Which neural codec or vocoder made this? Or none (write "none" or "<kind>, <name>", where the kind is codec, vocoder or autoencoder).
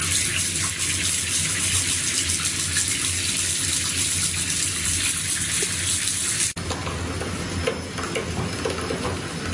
none